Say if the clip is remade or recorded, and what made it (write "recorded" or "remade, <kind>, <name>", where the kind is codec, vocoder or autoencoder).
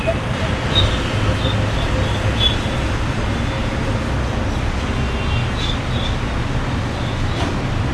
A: recorded